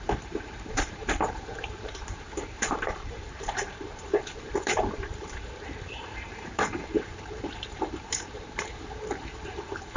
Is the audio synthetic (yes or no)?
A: yes